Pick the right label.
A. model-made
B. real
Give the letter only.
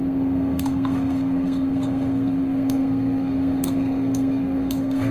A